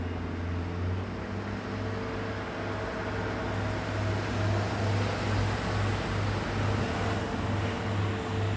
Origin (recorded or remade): recorded